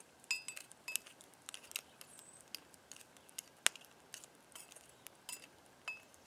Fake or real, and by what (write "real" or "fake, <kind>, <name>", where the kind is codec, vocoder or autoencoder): real